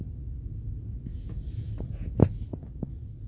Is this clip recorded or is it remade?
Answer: recorded